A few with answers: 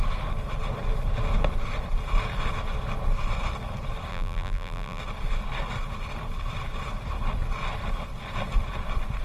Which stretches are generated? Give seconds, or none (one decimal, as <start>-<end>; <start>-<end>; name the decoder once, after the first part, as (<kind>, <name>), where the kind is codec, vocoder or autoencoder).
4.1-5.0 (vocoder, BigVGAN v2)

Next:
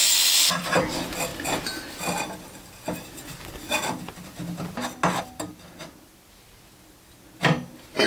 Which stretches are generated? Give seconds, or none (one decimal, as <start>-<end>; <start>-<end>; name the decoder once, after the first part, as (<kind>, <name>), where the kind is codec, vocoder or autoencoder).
0.0-0.8 (vocoder, BigVGAN v2)

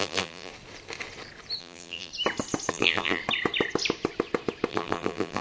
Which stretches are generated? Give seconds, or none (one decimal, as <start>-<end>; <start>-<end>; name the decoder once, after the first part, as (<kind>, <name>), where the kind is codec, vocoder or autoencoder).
0.0-0.5 (vocoder, BigVGAN v2); 1.6-2.1; 2.7-3.2; 4.7-5.4

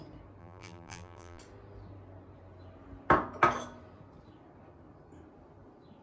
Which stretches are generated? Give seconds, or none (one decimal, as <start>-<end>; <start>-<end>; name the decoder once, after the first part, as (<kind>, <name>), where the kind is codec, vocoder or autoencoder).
0.4-1.4 (vocoder, BigVGAN v2)

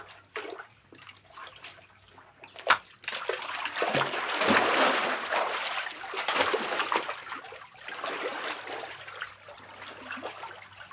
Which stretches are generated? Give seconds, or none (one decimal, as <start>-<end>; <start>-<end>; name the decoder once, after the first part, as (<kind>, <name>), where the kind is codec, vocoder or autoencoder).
8.3-8.9 (vocoder, BigVGAN v2)

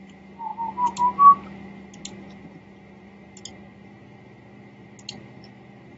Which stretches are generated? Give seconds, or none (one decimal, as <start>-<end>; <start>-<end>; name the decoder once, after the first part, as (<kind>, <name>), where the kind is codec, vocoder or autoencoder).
none

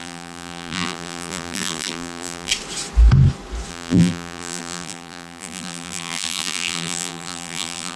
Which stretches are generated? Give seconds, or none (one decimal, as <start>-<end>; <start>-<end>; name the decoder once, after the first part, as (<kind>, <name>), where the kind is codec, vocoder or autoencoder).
0.0-2.5 (vocoder, BigVGAN v2); 3.7-8.0